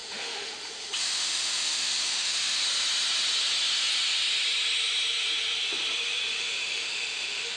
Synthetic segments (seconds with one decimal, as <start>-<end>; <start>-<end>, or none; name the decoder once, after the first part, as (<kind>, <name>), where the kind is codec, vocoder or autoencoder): 0.0-2.6 (autoencoder, DAC-VAE); 6.4-7.6